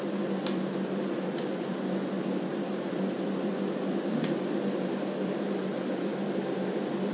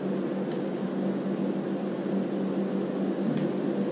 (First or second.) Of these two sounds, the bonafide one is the second